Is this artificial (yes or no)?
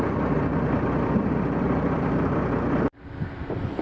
yes